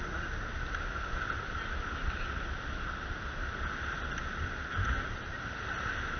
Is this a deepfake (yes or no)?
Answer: no